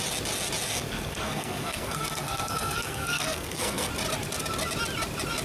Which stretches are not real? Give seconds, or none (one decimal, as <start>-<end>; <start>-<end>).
0.7-3.9